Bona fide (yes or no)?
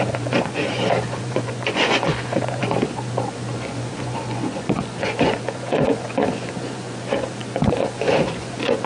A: no